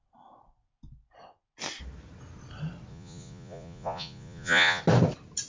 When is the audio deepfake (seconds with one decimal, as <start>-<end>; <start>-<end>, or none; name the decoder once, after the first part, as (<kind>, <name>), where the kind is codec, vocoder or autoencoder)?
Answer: 2.9-4.8 (vocoder, Vocos)